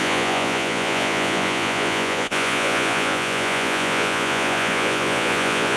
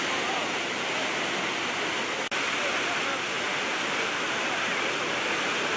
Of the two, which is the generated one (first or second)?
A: first